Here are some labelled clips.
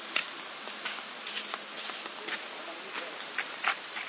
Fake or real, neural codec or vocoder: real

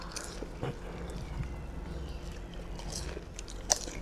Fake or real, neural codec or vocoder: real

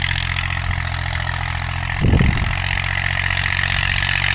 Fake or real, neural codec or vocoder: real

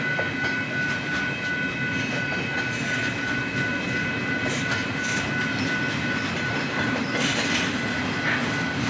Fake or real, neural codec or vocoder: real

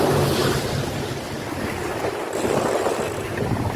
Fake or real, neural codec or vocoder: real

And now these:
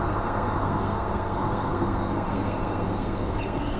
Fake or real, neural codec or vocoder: fake, codec, SNAC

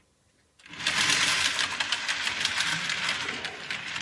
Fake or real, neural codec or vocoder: real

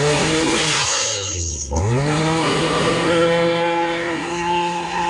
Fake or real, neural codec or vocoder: fake, codec, SNAC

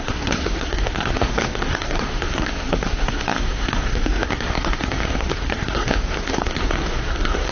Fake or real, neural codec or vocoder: fake, codec, SNAC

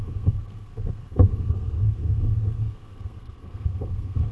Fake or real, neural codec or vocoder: fake, codec, SNAC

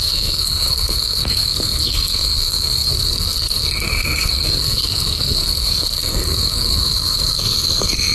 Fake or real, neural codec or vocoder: fake, codec, SNAC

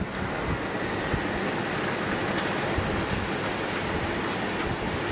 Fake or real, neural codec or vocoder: real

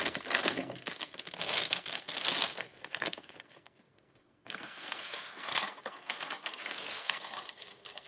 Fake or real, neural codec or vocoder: fake, codec, SNAC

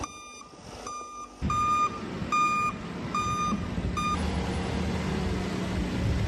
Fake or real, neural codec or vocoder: real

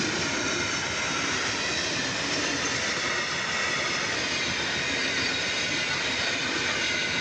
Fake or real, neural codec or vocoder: real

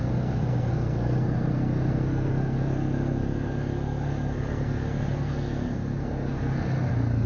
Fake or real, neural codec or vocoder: fake, codec, SNAC